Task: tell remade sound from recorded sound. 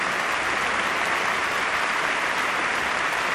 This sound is recorded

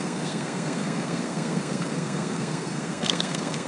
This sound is remade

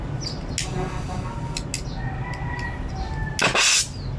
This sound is recorded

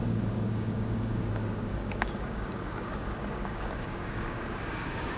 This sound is remade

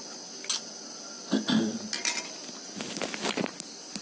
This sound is recorded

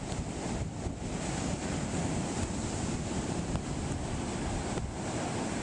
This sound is recorded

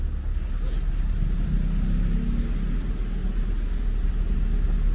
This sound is recorded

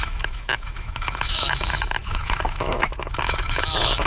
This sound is remade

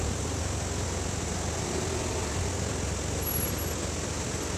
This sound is recorded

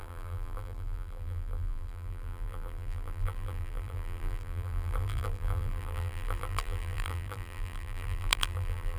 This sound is remade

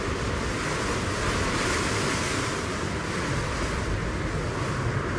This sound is recorded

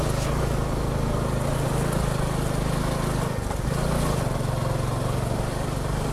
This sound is recorded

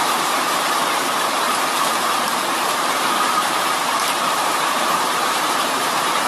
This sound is remade